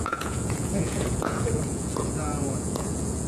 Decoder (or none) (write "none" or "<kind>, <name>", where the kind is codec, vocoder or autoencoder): vocoder, Vocos